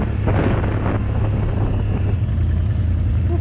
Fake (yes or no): no